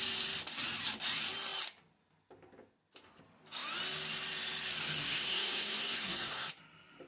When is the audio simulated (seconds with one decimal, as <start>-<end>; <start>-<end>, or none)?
5.0-6.5